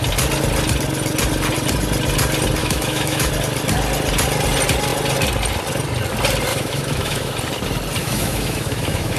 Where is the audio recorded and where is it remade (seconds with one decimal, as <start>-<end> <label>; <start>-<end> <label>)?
0.0-2.6 recorded; 2.6-3.3 remade; 3.3-6.5 recorded; 6.5-7.3 remade; 7.3-8.0 recorded; 8.0-9.2 remade